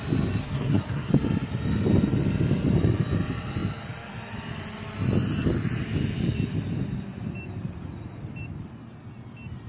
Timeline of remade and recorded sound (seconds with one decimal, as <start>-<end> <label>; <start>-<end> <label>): 0.0-0.4 recorded; 0.4-1.1 remade; 1.1-9.7 recorded